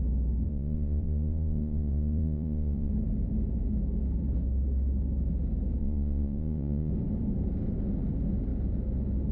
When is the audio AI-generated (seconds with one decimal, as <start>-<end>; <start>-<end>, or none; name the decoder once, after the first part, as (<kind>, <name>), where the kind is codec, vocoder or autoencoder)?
0.5-2.9 (vocoder, Vocos); 5.8-6.9